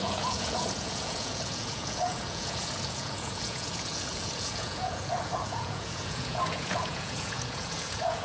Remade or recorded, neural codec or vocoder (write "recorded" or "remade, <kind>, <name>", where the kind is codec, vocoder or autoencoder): remade, vocoder, Vocos